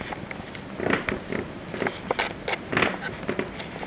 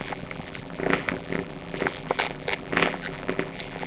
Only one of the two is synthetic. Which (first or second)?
second